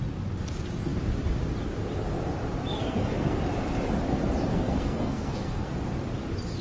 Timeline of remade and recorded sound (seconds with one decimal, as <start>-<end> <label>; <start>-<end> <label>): 0.0-2.7 recorded; 2.7-3.4 remade; 3.4-4.5 recorded; 4.5-5.7 remade; 5.7-6.6 recorded